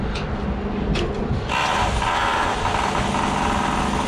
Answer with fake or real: real